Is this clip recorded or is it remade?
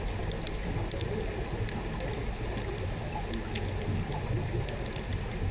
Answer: recorded